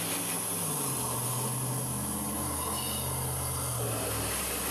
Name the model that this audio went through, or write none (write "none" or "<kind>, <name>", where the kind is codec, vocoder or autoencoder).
none